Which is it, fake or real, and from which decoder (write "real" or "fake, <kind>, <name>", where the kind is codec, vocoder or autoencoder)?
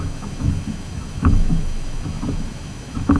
fake, autoencoder, DAC-VAE